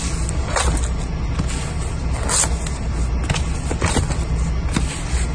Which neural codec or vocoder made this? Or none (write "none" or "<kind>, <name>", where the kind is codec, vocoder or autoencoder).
none